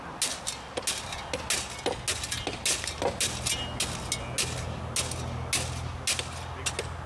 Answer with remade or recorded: recorded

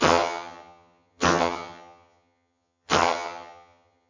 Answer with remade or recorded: remade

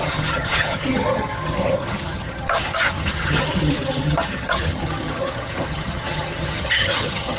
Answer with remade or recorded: remade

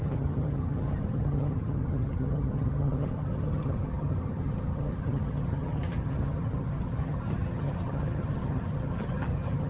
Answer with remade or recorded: remade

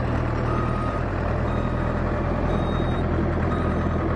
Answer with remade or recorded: remade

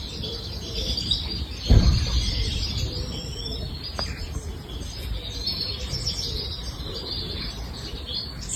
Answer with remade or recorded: recorded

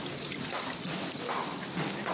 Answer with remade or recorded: recorded